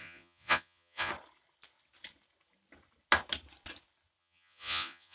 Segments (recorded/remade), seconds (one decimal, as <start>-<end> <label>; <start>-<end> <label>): 0.0-1.1 remade; 1.1-4.2 recorded; 4.2-5.1 remade